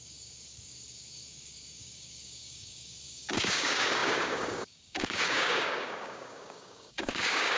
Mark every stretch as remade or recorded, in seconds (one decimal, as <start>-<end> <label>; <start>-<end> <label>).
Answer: 0.0-7.6 remade